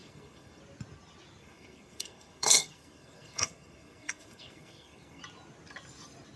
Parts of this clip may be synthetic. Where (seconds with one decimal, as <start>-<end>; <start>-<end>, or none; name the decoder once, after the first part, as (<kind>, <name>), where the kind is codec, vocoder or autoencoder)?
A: 0.0-0.6 (codec, SNAC); 1.4-5.2